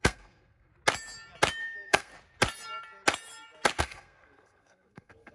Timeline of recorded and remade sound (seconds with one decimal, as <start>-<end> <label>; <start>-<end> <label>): 0.0-0.7 remade; 0.7-1.6 recorded; 1.6-2.1 remade; 2.1-3.8 recorded; 3.8-5.3 remade

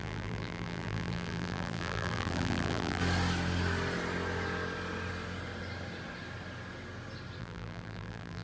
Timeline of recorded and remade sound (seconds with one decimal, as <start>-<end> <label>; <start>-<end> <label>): 0.0-3.0 remade; 3.0-7.4 recorded; 7.4-8.4 remade

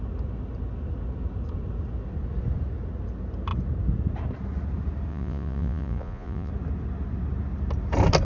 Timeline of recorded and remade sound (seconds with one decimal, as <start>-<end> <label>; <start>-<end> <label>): 0.0-5.1 recorded; 5.1-6.5 remade; 6.5-8.2 recorded

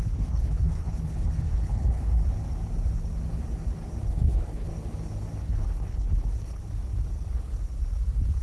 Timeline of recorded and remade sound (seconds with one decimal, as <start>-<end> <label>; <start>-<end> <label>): 0.0-2.1 remade; 2.1-4.1 recorded; 4.1-4.7 remade; 4.7-5.4 recorded; 5.4-6.6 remade; 6.6-8.4 recorded

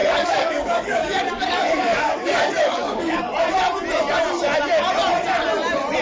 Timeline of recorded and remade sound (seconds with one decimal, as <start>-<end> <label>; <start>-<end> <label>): 0.0-3.2 remade; 3.2-6.0 recorded

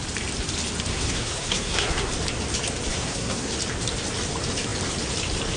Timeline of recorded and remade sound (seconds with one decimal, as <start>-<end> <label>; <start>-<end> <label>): 0.0-0.9 recorded; 0.9-2.1 remade; 2.1-2.9 recorded; 2.9-3.5 remade; 3.5-5.6 recorded